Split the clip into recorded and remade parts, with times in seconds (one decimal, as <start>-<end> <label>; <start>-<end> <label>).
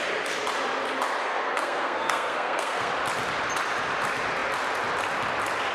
0.0-1.2 recorded; 1.2-2.9 remade; 2.9-5.7 recorded